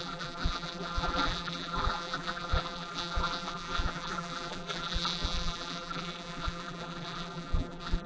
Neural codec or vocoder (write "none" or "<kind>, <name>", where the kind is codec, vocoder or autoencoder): vocoder, BigVGAN v2